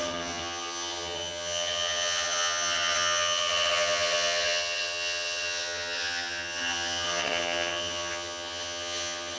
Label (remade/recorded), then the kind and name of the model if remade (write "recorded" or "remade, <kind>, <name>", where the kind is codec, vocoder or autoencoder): remade, vocoder, HiFi-GAN